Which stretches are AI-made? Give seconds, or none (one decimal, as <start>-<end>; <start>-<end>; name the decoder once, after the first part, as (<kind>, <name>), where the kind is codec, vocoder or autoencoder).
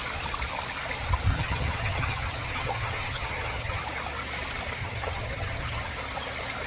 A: 1.3-3.8 (vocoder, HiFi-GAN); 4.8-5.9